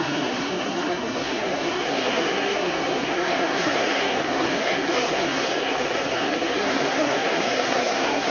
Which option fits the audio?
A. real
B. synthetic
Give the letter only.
B